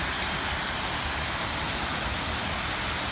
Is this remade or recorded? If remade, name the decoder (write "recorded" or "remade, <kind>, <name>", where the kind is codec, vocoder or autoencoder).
recorded